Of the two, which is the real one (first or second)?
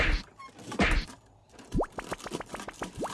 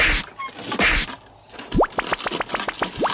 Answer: second